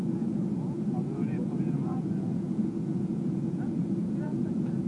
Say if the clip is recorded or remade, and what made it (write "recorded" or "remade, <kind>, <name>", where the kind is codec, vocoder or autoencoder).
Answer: remade, vocoder, Vocos